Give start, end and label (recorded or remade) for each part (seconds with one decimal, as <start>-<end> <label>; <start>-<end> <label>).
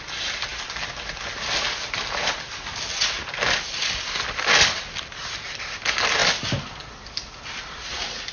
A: 0.0-6.2 recorded; 6.2-7.6 remade; 7.6-8.3 recorded